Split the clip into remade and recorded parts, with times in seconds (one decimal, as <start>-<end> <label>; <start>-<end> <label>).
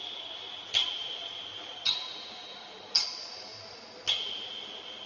0.0-1.0 recorded; 1.0-2.4 remade; 2.4-5.1 recorded